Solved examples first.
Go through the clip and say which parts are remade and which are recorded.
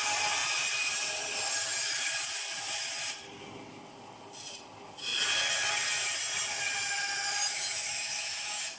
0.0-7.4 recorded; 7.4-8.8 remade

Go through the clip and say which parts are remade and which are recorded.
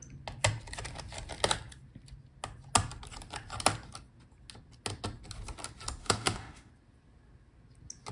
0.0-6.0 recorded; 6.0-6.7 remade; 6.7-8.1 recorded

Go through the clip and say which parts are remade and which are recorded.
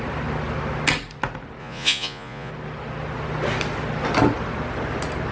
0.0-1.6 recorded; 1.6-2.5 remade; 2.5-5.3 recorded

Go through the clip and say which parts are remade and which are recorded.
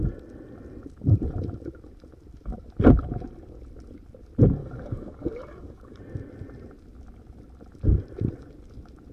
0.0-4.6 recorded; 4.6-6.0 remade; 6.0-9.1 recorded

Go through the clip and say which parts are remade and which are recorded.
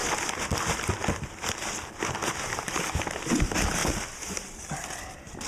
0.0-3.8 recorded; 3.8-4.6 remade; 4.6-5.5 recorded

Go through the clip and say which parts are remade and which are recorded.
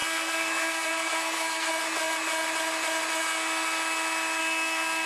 0.0-1.7 remade; 1.7-4.4 recorded; 4.4-5.1 remade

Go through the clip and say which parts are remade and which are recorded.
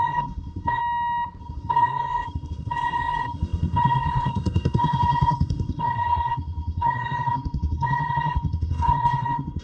0.0-0.8 remade; 0.8-1.4 recorded; 1.4-9.6 remade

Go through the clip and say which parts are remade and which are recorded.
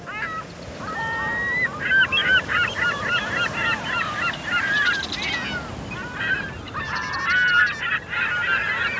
0.0-9.0 recorded